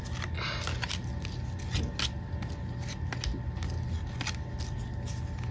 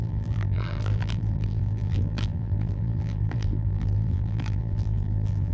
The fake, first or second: second